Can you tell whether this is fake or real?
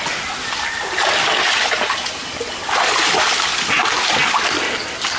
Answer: real